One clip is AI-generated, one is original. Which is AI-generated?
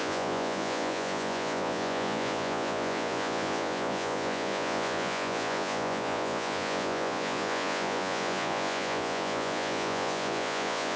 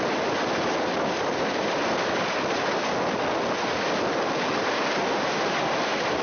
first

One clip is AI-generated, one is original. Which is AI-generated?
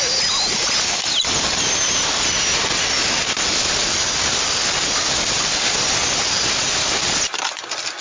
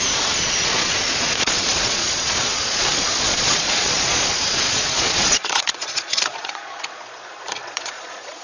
second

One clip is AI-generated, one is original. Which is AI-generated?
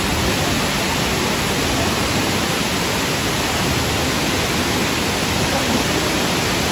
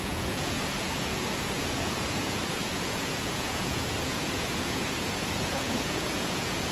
second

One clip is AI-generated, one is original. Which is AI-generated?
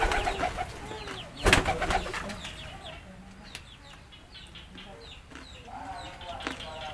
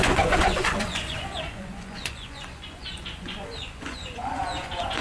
second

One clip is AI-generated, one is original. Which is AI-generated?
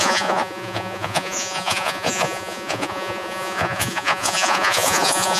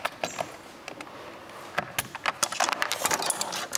first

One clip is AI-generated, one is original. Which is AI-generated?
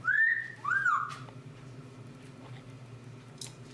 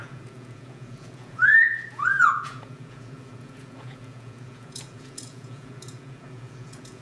second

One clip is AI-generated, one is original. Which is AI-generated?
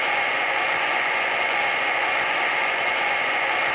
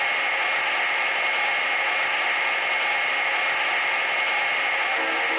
first